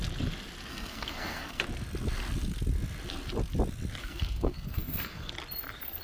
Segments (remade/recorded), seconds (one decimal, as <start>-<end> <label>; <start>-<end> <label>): 0.0-0.7 recorded; 0.7-1.6 remade; 1.6-4.0 recorded; 4.0-5.3 remade; 5.3-6.0 recorded